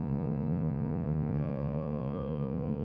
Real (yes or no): no